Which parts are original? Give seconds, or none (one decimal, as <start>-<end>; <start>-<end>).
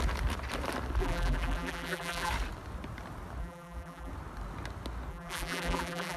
0.0-1.0; 2.3-3.4; 4.1-5.1